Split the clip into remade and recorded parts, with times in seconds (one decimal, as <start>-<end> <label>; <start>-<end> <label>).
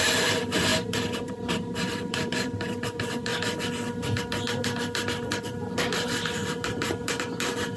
0.0-3.3 remade; 3.3-5.4 recorded; 5.4-7.8 remade